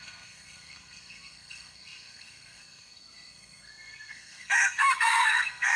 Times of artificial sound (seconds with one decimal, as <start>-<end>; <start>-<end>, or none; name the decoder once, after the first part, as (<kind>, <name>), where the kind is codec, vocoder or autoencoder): 0.0-5.8 (codec, SNAC)